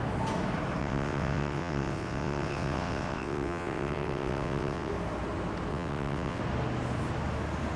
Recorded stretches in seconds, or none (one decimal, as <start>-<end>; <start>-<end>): 0.0-0.8; 4.9-5.7; 6.4-7.8